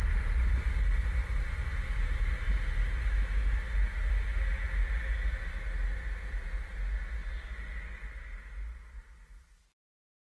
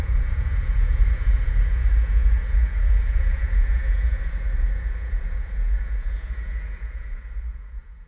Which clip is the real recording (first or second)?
first